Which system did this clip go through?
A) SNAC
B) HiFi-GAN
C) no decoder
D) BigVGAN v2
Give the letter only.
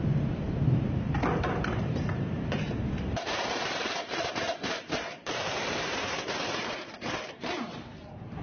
D